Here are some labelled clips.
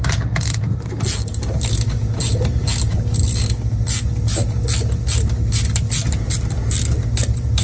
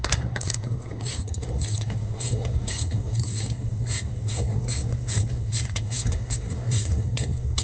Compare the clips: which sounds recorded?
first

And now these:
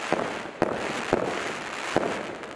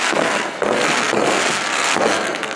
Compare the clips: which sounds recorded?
first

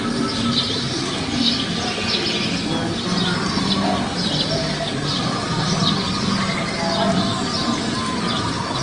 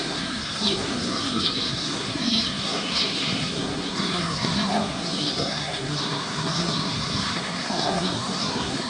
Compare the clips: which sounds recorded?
first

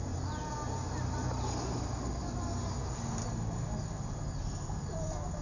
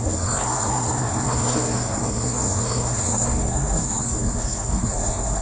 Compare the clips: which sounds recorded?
first